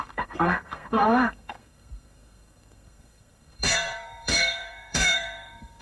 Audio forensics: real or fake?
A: fake